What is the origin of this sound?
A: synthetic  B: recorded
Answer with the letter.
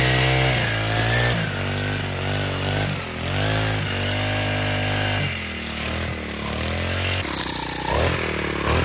B